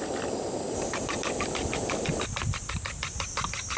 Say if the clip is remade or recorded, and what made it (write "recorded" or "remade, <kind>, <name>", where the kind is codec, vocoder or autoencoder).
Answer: recorded